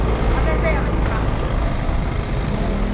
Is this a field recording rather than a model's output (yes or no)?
yes